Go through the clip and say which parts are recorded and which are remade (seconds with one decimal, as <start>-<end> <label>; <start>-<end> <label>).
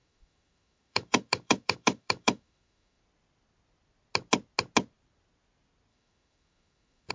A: 0.0-3.0 remade; 3.0-5.9 recorded; 5.9-7.1 remade